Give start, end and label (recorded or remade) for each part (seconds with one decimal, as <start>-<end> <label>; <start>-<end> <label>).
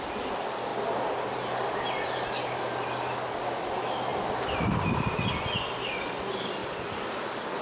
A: 0.0-7.6 recorded